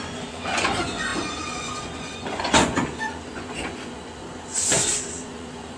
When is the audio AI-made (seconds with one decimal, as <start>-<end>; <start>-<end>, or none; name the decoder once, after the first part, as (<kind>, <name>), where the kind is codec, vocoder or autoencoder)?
0.0-5.8 (vocoder, Vocos)